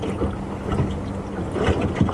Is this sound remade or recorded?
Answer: recorded